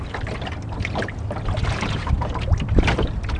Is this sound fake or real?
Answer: real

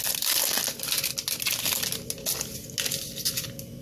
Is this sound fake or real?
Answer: real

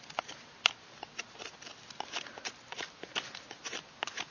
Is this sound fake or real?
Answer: real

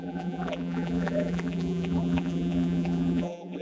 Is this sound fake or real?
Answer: fake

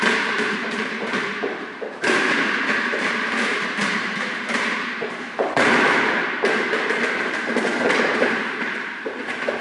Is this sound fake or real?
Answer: fake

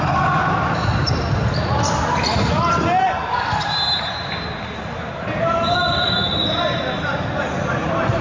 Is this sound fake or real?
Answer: real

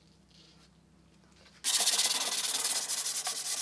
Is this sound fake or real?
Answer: real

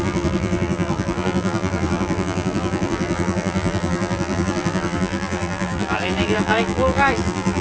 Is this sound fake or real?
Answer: fake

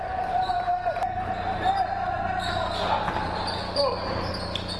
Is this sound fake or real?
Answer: fake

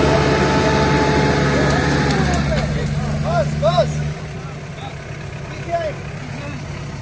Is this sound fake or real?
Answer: real